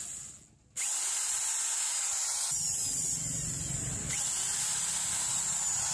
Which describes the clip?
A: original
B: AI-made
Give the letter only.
A